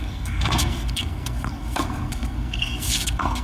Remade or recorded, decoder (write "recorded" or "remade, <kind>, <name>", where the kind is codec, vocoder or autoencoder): remade, codec, SNAC